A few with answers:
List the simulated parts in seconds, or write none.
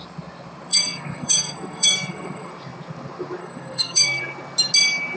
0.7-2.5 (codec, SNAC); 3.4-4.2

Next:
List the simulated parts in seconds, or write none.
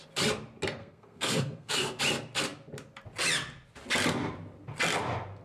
0.8-2.0 (codec, SNAC)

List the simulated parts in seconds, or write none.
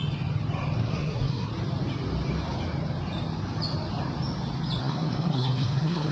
0.8-1.5 (codec, SNAC); 4.8-6.1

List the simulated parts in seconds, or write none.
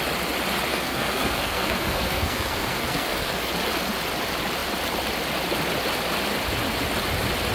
0.7-3.5 (codec, SNAC)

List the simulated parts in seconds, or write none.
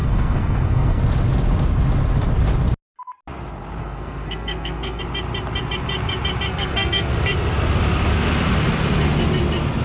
0.0-1.0 (codec, SNAC); 3.8-5.0; 6.5-7.1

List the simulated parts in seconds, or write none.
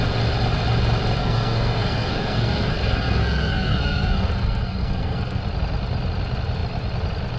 1.2-5.4 (codec, SNAC)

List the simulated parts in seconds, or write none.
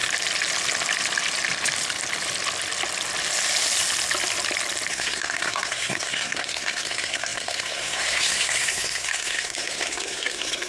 4.9-10.7 (codec, SNAC)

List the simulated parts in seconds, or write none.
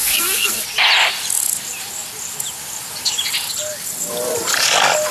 0.0-0.6 (codec, SNAC)